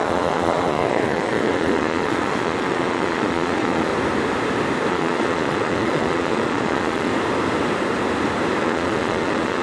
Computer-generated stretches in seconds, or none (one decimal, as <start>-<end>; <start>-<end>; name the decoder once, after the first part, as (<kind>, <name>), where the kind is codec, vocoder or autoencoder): 0.0-3.9 (vocoder, Vocos); 4.9-7.1; 8.6-9.6

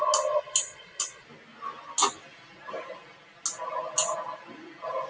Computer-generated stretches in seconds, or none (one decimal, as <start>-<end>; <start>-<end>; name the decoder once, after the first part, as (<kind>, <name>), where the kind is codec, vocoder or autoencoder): none